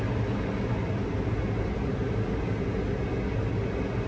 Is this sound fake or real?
real